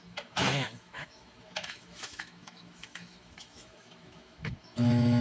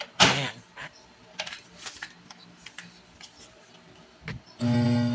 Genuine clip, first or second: second